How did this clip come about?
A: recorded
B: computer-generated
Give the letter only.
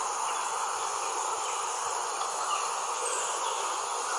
B